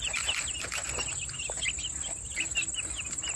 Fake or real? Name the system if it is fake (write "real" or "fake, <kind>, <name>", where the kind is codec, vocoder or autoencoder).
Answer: real